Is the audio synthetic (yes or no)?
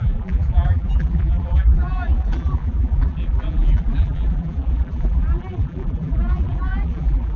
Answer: yes